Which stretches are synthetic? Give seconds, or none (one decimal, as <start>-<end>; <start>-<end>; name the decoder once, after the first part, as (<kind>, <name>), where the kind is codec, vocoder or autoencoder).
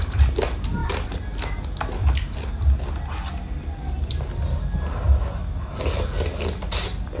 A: none